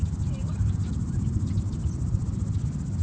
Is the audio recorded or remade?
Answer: recorded